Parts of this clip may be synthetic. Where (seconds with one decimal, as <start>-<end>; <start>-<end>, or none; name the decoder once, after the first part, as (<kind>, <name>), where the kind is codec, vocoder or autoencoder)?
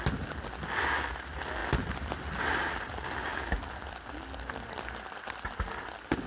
1.6-2.8 (vocoder, BigVGAN v2)